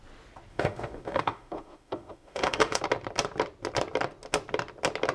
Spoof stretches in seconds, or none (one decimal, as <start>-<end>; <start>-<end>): 0.5-2.8